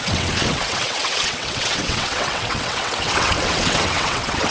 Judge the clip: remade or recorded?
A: remade